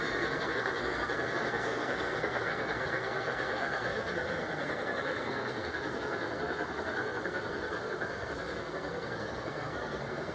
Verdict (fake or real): fake